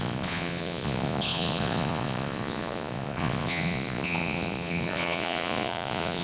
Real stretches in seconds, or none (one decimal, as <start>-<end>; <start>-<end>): none